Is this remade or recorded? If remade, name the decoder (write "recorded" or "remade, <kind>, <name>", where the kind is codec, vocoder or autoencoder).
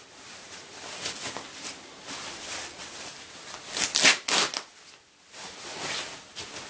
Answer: recorded